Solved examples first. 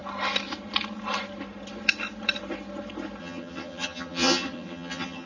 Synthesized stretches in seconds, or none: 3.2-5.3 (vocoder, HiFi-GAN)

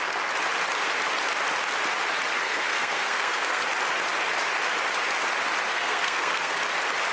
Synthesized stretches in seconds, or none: 2.4-3.6 (codec, SNAC); 5.7-6.6

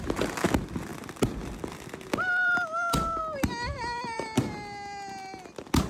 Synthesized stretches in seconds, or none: 0.9-3.2 (vocoder, BigVGAN v2); 3.7-4.5

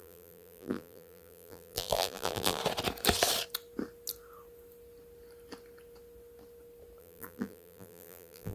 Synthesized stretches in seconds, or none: 0.0-2.6 (vocoder, BigVGAN v2); 7.0-8.5

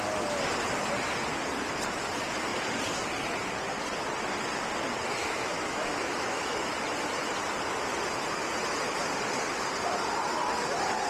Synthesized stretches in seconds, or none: 5.2-6.6 (autoencoder, DAC-VAE)

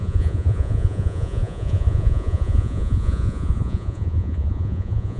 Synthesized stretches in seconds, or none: 0.0-5.2 (vocoder, Vocos)

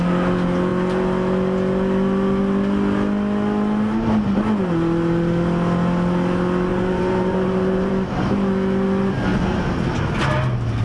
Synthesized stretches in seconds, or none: 6.7-7.9 (vocoder, BigVGAN v2)